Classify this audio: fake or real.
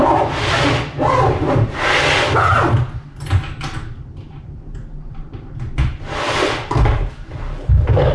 real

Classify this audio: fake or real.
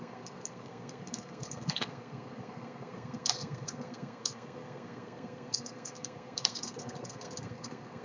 fake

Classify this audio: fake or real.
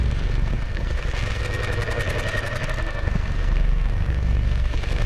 fake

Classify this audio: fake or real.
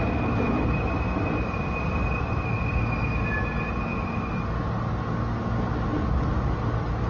real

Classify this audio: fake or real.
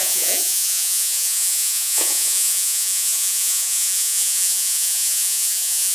fake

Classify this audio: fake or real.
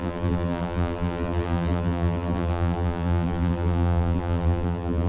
fake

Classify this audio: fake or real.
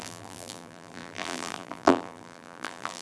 fake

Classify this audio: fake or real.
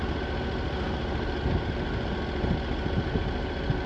real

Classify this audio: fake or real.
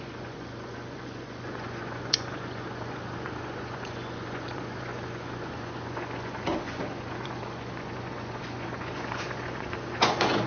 fake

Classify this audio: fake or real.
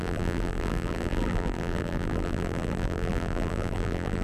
fake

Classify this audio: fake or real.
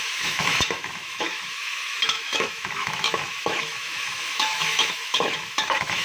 fake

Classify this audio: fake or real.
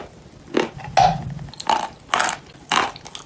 real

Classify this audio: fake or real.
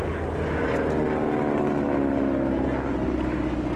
real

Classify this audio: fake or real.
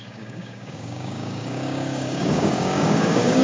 fake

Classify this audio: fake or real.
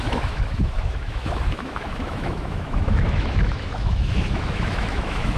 fake